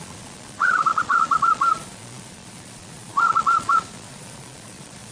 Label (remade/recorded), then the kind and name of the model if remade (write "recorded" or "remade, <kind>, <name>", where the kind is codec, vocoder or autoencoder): remade, vocoder, Vocos